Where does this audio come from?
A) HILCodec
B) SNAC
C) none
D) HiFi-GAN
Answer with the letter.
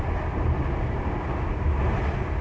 C